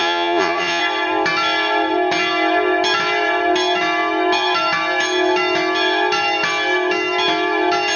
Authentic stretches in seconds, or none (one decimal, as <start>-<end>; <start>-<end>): 0.8-8.0